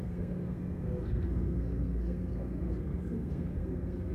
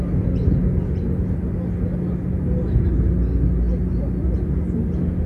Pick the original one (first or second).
second